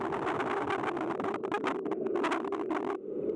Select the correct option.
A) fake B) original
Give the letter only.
B